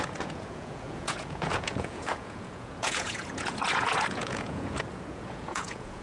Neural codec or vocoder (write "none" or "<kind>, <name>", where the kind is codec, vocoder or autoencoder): vocoder, Vocos